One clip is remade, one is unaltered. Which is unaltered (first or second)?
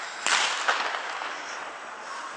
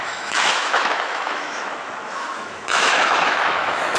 first